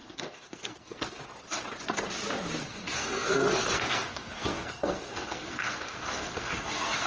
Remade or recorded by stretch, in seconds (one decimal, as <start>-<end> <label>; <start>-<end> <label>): 0.0-1.2 remade; 1.2-2.6 recorded; 2.6-7.1 remade